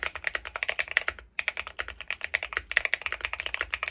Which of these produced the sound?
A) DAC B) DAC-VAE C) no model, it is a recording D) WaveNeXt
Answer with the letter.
C